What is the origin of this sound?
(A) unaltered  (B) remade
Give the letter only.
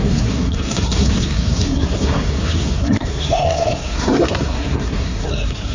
B